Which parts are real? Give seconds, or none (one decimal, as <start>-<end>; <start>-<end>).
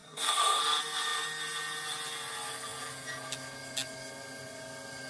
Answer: 0.6-5.1